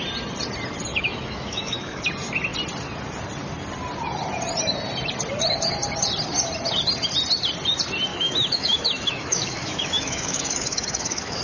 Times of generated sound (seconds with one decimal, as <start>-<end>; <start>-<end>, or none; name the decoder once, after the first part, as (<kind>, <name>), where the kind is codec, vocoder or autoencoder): 0.9-2.0 (autoencoder, DAC-VAE); 8.1-11.4